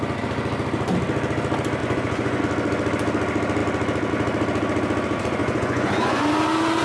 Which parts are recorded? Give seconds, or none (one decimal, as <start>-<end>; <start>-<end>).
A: 0.0-1.8; 2.4-5.4; 6.2-6.8